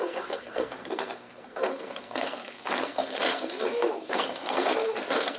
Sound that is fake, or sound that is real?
fake